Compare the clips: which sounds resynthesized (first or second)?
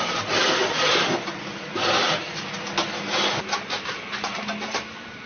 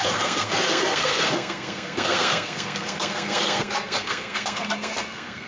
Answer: second